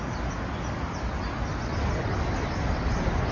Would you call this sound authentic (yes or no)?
yes